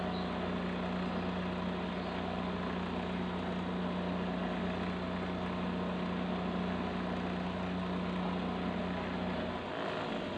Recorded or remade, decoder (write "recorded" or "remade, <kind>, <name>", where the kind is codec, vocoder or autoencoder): recorded